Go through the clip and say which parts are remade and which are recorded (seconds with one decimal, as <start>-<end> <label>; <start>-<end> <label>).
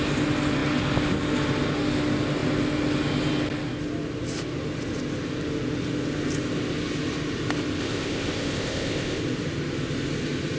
0.0-7.8 recorded; 7.8-9.2 remade; 9.2-10.6 recorded